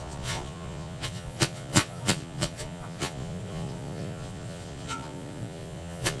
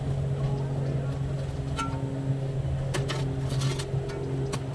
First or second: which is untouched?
second